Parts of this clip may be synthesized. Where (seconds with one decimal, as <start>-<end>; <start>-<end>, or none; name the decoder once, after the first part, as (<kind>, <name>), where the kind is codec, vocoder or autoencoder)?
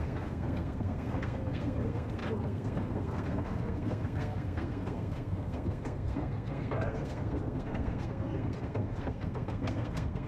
0.0-10.3 (codec, SNAC)